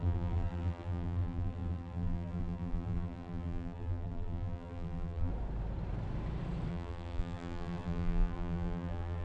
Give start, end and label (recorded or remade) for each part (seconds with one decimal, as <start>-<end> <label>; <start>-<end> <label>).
0.0-5.3 remade; 5.3-6.7 recorded; 6.7-9.2 remade